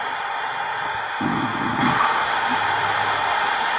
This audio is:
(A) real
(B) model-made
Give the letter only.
A